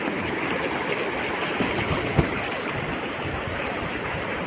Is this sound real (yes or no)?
yes